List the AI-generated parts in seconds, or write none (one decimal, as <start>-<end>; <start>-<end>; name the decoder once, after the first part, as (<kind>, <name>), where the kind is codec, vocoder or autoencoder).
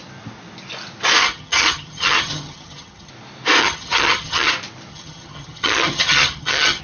1.2-3.1 (vocoder, HiFi-GAN); 3.6-4.5; 4.9-6.8